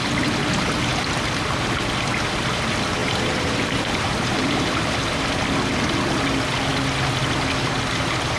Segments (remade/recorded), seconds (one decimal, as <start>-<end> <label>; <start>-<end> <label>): 0.0-3.0 recorded; 3.0-5.2 remade; 5.2-8.4 recorded